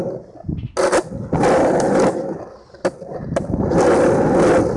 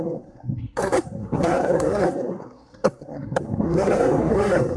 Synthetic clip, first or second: second